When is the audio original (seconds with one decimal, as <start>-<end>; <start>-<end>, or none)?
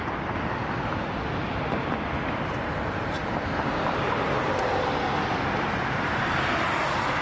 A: 0.0-7.2